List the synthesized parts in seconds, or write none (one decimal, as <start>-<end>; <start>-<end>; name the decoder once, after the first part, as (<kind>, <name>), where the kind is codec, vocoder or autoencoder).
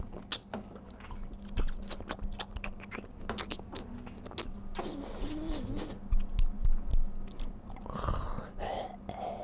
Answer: none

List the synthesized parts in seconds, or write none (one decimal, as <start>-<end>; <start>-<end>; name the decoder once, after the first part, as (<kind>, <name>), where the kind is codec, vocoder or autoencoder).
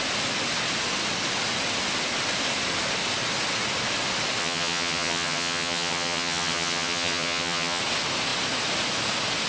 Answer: 4.4-7.8 (vocoder, HiFi-GAN)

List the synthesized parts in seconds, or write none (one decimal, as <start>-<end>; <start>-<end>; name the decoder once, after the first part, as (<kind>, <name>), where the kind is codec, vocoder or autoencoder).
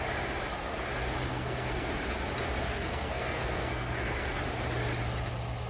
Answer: 1.3-1.9 (codec, SNAC); 2.7-4.4